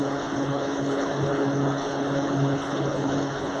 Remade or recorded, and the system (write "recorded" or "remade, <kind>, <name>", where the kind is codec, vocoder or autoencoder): remade, codec, HILCodec